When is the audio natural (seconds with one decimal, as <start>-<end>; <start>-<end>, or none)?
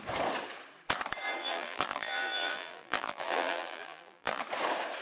0.0-1.4; 4.4-5.0